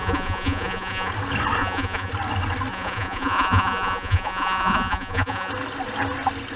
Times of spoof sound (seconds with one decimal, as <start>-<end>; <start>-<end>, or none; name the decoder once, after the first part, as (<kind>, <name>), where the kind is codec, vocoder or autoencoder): 0.0-1.1 (vocoder, Vocos); 1.6-2.1; 2.7-5.5